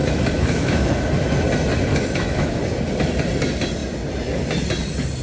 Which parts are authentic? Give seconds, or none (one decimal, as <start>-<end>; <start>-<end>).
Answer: 0.9-1.9; 2.6-5.2